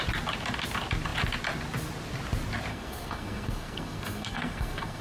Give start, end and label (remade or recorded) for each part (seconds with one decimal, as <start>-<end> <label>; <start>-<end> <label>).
0.0-2.7 recorded; 2.7-5.0 remade